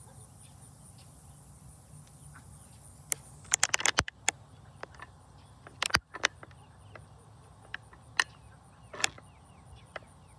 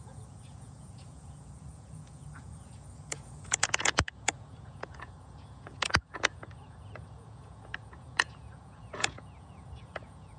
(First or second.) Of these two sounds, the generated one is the second